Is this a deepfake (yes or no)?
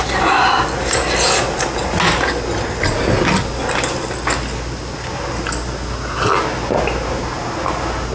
no